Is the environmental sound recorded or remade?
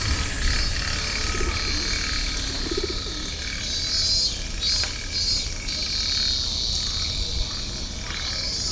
recorded